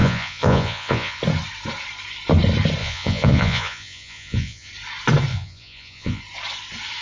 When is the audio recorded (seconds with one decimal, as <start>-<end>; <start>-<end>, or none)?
1.2-2.8; 4.7-5.3; 6.2-7.0